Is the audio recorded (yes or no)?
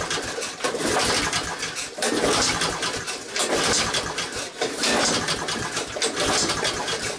yes